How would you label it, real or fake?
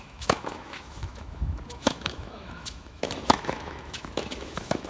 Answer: fake